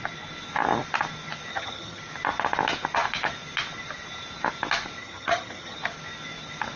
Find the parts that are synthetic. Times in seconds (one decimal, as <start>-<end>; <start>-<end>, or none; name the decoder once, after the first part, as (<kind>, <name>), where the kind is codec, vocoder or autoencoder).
1.5-2.0 (vocoder, HiFi-GAN); 5.0-5.8